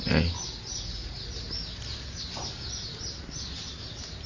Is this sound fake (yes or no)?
no